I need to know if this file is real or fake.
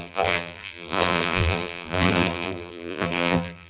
fake